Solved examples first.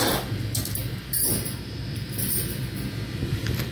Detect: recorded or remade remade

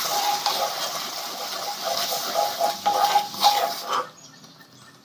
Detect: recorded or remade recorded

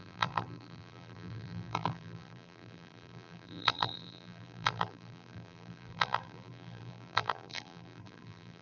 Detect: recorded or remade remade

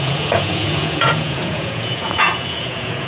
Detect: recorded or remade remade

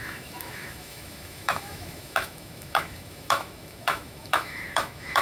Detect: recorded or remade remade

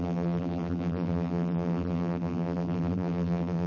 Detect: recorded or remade remade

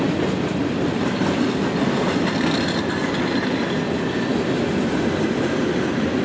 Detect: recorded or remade recorded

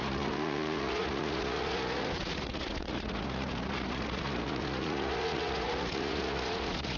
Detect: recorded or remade remade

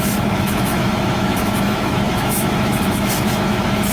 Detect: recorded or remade remade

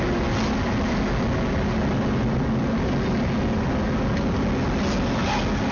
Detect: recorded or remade recorded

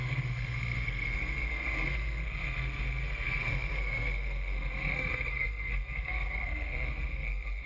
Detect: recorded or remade remade